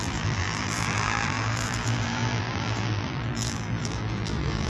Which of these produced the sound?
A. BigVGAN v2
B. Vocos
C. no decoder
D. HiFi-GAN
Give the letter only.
A